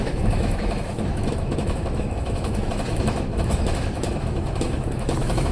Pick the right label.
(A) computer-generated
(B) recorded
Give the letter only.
A